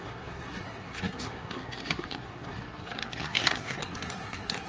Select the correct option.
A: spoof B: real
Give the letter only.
A